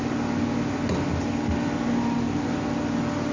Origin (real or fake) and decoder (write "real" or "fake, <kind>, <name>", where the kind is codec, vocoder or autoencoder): real